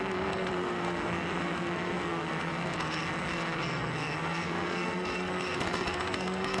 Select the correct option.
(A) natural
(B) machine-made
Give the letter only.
B